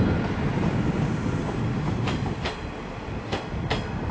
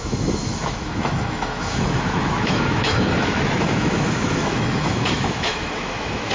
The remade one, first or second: second